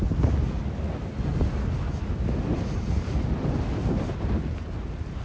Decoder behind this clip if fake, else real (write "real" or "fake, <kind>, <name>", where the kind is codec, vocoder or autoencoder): real